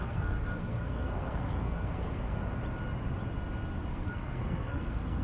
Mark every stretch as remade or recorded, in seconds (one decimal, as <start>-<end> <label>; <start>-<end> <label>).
0.0-2.4 remade; 2.4-3.9 recorded; 3.9-5.2 remade